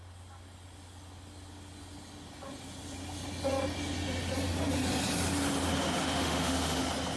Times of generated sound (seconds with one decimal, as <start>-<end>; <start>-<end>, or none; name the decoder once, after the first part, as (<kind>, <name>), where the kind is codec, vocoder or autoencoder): 6.0-6.8 (autoencoder, DAC-VAE)